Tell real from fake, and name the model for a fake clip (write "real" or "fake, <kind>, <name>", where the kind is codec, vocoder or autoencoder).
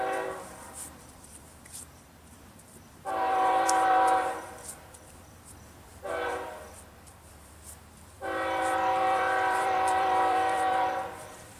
fake, vocoder, BigVGAN v2